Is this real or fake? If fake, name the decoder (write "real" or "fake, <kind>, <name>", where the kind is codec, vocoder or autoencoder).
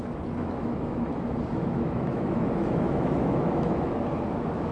fake, autoencoder, DAC-VAE